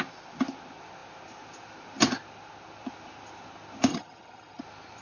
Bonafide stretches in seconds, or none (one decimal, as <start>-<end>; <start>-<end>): 0.0-3.9; 4.6-5.0